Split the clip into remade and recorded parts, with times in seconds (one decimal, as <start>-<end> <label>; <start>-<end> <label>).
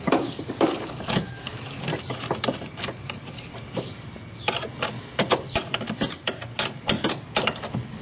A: 0.0-1.9 remade; 1.9-2.8 recorded; 2.8-3.5 remade; 3.5-7.1 recorded; 7.1-8.0 remade